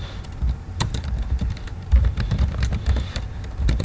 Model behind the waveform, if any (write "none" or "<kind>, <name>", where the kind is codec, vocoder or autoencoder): vocoder, BigVGAN v2